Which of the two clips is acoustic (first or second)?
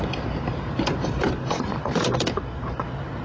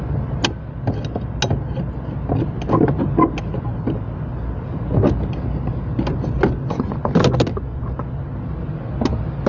second